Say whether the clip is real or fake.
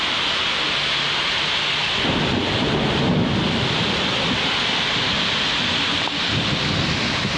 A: real